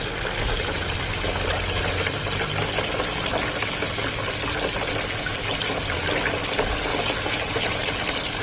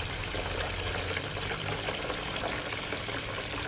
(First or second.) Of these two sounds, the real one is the first